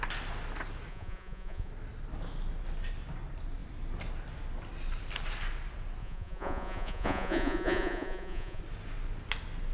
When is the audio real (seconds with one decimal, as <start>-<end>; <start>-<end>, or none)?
0.0-0.9; 1.7-6.0; 8.6-9.7